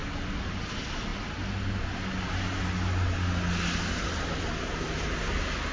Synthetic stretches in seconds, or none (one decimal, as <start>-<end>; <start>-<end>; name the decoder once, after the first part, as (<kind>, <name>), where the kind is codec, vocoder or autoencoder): none